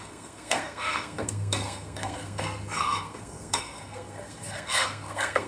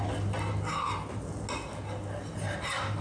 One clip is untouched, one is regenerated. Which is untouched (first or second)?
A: second